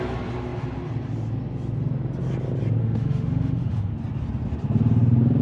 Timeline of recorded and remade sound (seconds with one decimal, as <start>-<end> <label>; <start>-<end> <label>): 0.0-2.8 recorded; 2.8-3.9 remade; 3.9-5.4 recorded